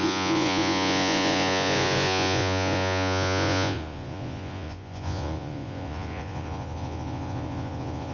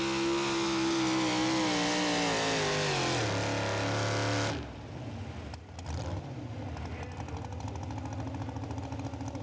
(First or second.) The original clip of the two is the second